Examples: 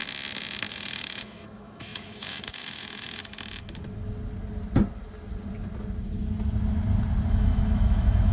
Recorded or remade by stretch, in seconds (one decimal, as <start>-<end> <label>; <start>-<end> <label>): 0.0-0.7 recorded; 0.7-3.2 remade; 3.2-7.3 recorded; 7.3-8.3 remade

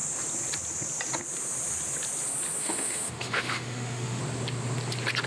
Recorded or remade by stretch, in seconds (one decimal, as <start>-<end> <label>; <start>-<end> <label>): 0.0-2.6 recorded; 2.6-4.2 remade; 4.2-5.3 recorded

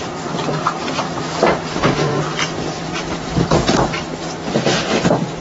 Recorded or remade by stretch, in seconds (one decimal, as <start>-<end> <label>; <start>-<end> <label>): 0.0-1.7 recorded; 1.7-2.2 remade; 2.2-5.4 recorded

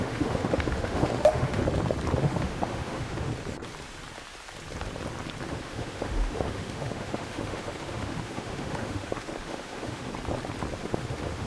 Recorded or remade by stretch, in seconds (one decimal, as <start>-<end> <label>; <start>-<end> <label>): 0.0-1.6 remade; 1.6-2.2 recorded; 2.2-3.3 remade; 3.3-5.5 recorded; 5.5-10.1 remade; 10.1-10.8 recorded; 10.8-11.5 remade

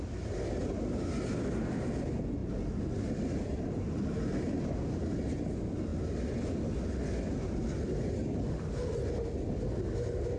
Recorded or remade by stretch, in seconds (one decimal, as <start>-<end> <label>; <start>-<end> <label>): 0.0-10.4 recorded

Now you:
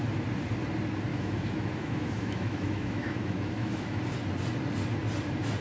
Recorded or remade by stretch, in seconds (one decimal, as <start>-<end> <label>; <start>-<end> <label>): 0.0-1.1 recorded; 1.1-4.0 remade; 4.0-5.6 recorded